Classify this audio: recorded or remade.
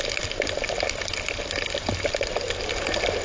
recorded